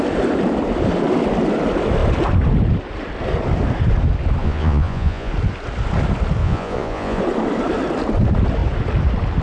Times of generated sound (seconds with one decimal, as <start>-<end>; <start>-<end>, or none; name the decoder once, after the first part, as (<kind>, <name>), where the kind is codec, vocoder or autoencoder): 4.4-5.3 (vocoder, Vocos); 6.4-7.2